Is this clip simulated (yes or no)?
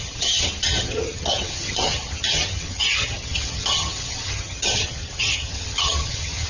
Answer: yes